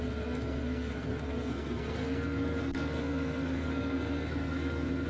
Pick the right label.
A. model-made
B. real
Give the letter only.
A